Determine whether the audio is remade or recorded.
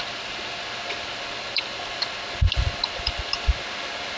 recorded